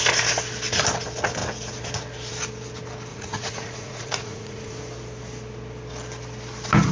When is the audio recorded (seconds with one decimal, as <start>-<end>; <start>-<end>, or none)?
0.0-3.1; 4.7-6.9